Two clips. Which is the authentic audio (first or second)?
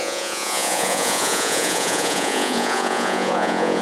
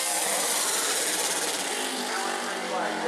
second